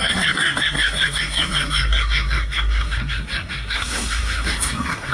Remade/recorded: remade